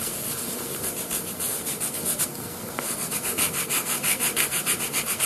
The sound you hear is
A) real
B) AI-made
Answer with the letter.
B